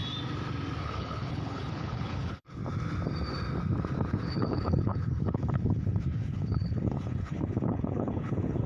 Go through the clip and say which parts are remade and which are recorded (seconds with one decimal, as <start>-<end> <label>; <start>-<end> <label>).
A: 0.0-0.8 recorded; 0.8-2.6 remade; 2.6-4.2 recorded; 4.2-8.7 remade